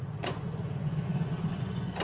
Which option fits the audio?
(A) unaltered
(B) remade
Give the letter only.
B